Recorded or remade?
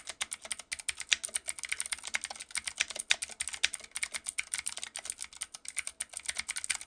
recorded